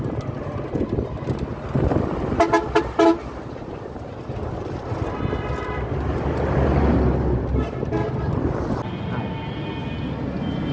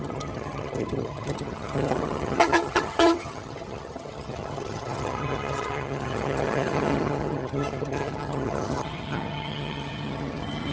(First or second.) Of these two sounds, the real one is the first